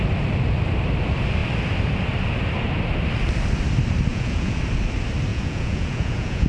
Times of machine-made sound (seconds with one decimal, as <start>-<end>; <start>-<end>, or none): 4.1-4.6; 5.3-6.5